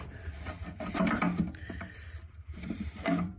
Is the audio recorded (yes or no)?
no